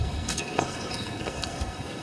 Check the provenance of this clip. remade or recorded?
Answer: remade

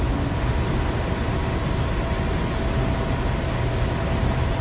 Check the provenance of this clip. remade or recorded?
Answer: recorded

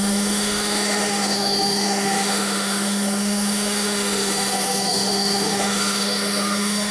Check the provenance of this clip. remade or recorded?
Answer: remade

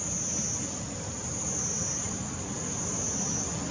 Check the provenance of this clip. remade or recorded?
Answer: recorded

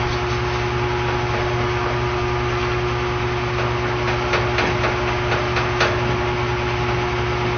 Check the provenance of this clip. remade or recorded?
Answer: recorded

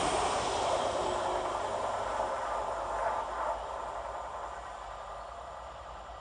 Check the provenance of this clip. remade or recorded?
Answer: recorded